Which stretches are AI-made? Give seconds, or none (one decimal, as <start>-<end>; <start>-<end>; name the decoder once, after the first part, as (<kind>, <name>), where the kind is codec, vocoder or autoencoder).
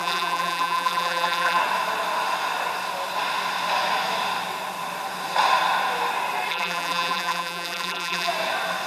0.0-1.6 (vocoder, BigVGAN v2); 6.5-8.3